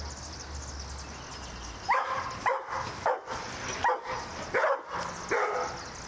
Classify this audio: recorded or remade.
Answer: recorded